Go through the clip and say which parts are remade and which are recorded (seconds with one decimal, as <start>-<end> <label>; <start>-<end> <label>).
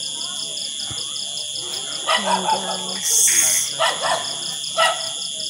0.0-5.5 recorded